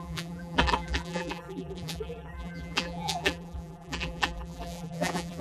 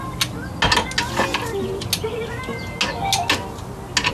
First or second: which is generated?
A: first